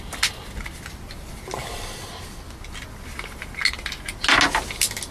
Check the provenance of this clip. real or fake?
real